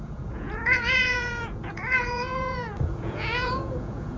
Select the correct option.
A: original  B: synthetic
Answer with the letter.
B